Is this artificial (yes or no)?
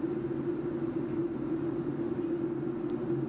no